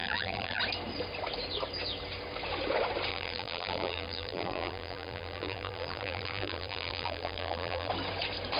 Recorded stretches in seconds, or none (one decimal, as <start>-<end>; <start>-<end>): 0.6-3.1; 7.9-8.6